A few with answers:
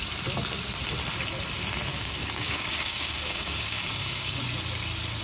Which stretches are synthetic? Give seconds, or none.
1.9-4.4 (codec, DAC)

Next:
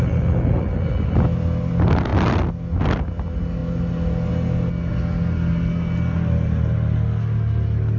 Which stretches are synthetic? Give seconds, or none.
none

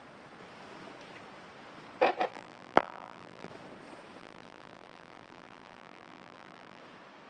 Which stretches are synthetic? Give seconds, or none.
2.3-3.5 (vocoder, BigVGAN v2); 4.2-6.8

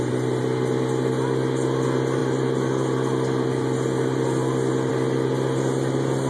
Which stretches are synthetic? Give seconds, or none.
none

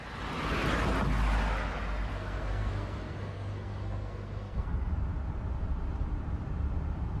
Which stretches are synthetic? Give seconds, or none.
2.1-4.9 (codec, SNAC)

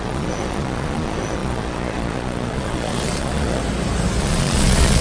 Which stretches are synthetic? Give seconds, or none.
0.0-3.6 (vocoder, Vocos); 4.2-5.0

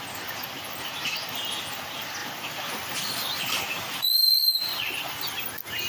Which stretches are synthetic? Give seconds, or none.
none